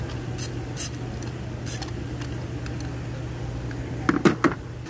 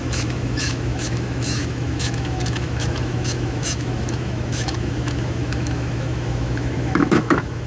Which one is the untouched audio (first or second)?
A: first